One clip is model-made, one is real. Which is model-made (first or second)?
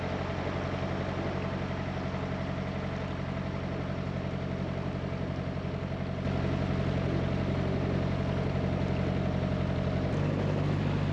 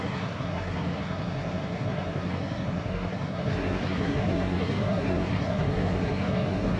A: second